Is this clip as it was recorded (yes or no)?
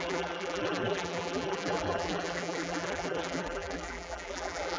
no